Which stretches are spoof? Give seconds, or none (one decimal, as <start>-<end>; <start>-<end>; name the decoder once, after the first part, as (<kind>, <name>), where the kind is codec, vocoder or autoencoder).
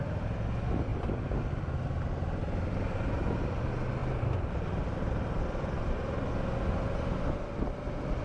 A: none